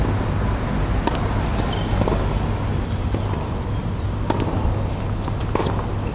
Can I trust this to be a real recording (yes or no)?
yes